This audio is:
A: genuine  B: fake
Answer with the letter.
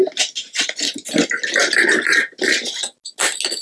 A